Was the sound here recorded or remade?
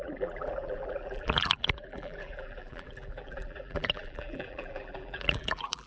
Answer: remade